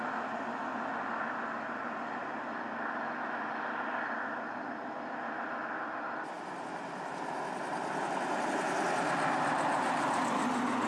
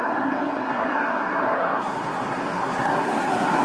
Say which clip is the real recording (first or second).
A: first